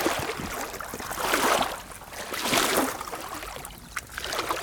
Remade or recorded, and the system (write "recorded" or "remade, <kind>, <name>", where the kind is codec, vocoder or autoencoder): recorded